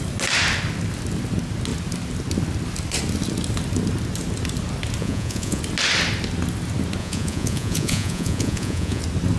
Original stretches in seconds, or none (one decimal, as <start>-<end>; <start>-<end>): 0.0-5.0; 5.6-7.0; 9.0-9.4